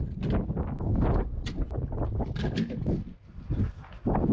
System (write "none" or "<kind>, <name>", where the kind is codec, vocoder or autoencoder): none